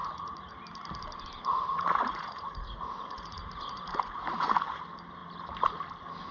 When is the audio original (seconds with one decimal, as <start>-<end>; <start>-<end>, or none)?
0.5-1.7; 4.8-6.3